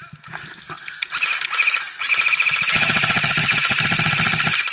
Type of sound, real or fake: real